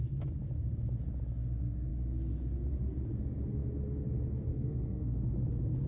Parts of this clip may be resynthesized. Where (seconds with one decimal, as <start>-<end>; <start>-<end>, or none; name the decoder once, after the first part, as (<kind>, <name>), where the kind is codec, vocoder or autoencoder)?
4.5-5.3 (codec, SNAC)